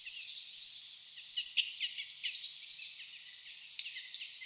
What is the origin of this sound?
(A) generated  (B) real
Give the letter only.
B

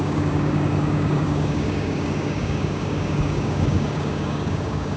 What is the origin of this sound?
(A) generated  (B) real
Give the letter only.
A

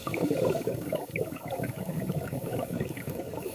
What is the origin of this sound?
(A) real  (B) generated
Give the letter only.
B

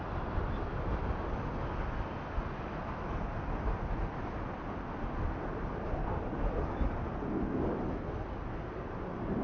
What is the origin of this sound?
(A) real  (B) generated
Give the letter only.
A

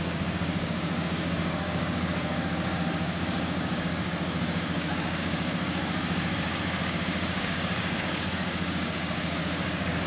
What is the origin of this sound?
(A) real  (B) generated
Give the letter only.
B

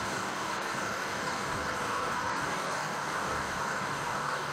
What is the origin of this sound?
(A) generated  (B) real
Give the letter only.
A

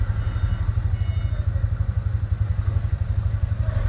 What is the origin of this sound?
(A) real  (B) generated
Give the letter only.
A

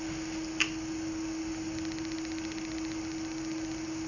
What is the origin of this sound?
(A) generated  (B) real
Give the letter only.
B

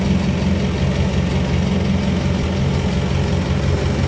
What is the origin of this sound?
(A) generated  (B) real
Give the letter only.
B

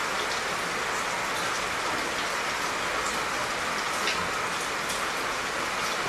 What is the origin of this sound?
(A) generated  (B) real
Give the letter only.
B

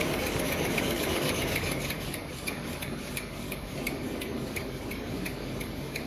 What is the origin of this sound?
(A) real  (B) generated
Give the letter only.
B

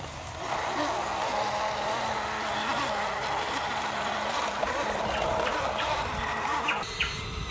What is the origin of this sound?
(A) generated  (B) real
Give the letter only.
B